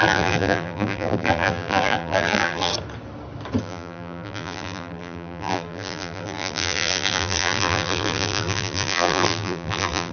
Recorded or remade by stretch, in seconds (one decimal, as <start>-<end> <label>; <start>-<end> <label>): 0.0-2.7 remade; 2.7-3.6 recorded; 3.6-10.1 remade